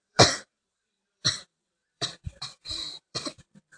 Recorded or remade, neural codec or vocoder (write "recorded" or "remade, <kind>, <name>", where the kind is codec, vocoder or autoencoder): remade, vocoder, BigVGAN v2